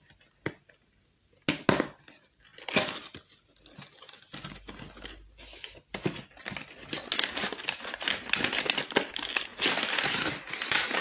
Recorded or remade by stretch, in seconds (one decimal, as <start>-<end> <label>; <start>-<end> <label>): 0.0-11.0 recorded